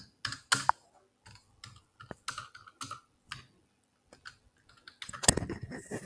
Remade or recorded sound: recorded